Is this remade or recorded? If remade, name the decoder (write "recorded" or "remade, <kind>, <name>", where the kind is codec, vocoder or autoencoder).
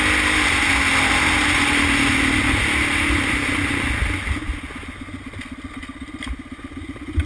recorded